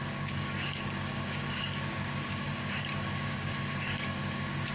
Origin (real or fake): fake